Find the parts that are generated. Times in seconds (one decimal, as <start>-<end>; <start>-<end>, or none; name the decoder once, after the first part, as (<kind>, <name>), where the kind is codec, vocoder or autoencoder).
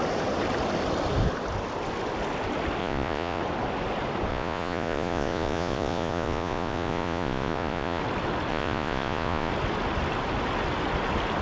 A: 2.8-3.4 (vocoder, Vocos); 4.3-8.0; 8.5-9.5